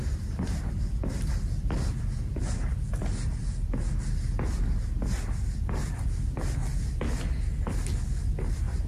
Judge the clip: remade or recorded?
recorded